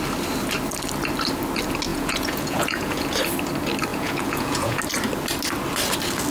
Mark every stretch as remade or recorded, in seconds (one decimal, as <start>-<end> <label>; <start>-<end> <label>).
0.0-1.9 recorded; 1.9-3.2 remade; 3.2-3.9 recorded; 3.9-4.8 remade; 4.8-6.3 recorded